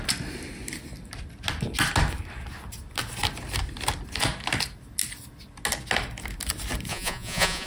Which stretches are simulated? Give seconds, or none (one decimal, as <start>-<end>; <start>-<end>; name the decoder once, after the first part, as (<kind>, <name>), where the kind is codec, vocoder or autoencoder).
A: 6.9-7.7 (vocoder, Vocos)